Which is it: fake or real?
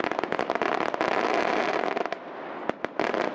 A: real